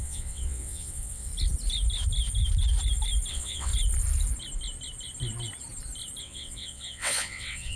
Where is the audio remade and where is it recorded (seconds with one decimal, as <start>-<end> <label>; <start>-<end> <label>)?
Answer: 0.0-1.3 remade; 1.3-3.3 recorded; 3.3-3.7 remade; 3.7-6.2 recorded; 6.2-7.8 remade